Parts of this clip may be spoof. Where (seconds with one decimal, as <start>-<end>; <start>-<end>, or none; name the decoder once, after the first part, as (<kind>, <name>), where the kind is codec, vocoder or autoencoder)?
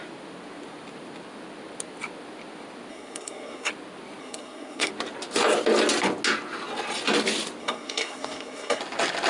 2.9-3.7 (codec, SNAC); 4.2-4.9; 7.6-8.8